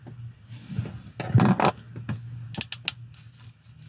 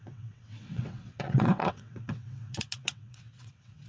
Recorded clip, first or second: first